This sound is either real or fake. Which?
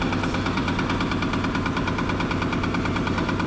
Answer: real